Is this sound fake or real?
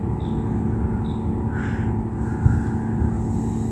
real